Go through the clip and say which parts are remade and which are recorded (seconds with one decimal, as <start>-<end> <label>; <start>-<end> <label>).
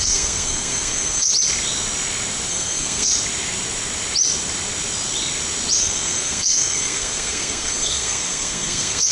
0.0-1.3 remade; 1.3-2.5 recorded; 2.5-3.1 remade; 3.1-5.8 recorded; 5.8-9.1 remade